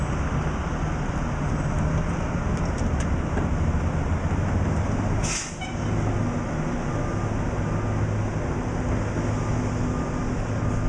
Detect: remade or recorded recorded